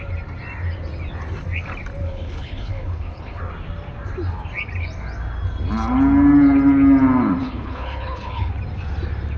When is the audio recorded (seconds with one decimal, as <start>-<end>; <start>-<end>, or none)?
0.0-2.0; 3.4-7.4; 8.5-9.4